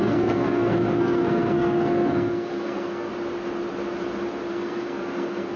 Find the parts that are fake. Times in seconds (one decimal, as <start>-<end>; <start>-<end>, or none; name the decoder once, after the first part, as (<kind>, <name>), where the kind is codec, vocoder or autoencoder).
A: 0.0-3.1 (codec, SNAC); 4.5-5.6